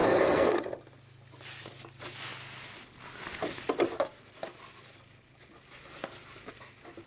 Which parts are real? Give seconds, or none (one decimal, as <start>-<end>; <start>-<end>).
0.6-7.1